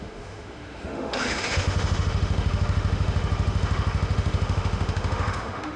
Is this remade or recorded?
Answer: remade